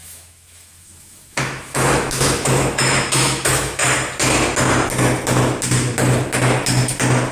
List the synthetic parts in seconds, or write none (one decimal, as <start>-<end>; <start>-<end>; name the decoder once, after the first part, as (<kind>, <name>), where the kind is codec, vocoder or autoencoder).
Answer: 0.0-3.8 (autoencoder, DAC-VAE)